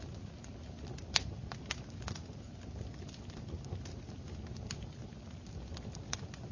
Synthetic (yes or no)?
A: no